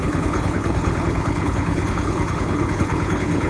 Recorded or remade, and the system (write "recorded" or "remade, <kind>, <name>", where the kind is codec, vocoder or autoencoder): remade, codec, HILCodec